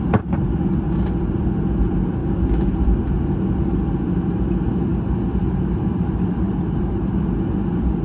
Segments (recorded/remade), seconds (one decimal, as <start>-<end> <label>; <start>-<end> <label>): 0.0-2.2 recorded; 2.2-2.7 remade; 2.7-8.0 recorded